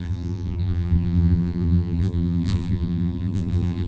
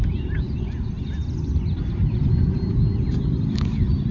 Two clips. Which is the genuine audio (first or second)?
second